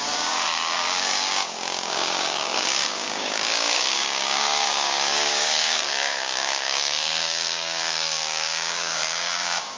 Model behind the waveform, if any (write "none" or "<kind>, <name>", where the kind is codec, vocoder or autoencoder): codec, DAC